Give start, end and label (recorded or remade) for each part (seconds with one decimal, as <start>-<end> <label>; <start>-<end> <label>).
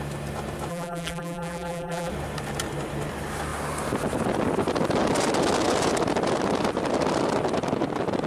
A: 0.0-0.7 recorded; 0.7-2.1 remade; 2.1-8.3 recorded